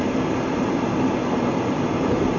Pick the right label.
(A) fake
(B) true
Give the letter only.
B